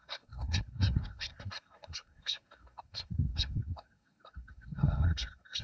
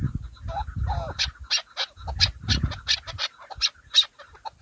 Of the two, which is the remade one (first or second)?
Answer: first